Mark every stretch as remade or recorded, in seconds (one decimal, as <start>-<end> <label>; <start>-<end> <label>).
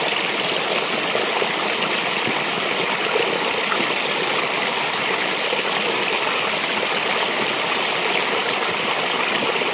0.0-9.7 recorded